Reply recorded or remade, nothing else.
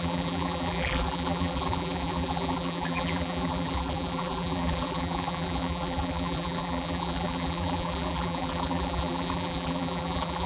remade